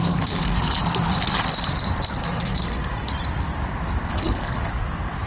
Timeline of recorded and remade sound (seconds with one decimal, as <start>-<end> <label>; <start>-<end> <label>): 0.0-0.8 remade; 0.8-2.2 recorded; 2.2-3.1 remade; 3.1-4.1 recorded; 4.1-4.7 remade; 4.7-5.3 recorded